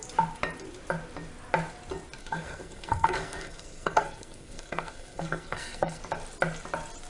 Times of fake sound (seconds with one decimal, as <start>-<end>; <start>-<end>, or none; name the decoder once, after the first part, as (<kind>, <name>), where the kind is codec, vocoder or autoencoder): 2.2-6.0 (codec, SNAC)